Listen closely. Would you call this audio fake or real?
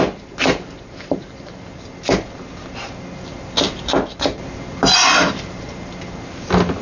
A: real